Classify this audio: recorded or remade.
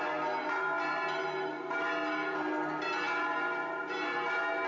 recorded